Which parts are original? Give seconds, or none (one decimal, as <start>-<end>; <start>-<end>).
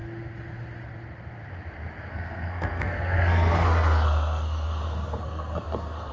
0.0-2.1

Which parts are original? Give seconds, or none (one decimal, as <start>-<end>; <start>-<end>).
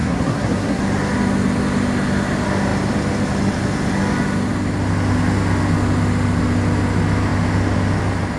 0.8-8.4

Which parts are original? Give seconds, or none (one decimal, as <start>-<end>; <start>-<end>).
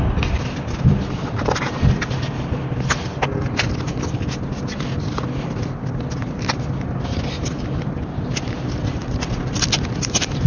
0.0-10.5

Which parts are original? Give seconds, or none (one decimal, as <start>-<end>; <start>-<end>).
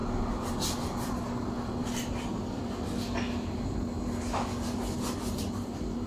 0.0-6.1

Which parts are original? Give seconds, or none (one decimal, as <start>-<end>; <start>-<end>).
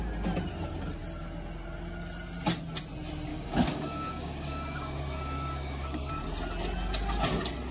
0.0-3.3; 6.1-7.7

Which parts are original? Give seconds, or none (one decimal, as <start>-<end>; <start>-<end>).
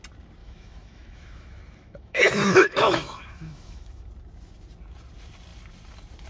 0.0-0.4; 4.1-6.3